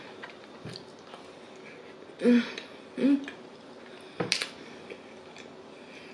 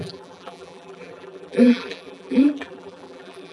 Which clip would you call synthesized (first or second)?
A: second